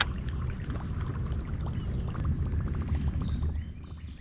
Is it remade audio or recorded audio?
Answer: recorded